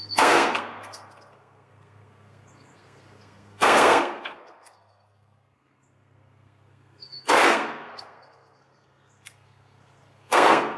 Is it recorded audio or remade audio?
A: remade